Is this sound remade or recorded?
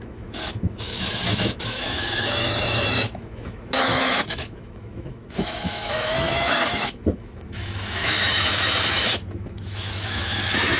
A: remade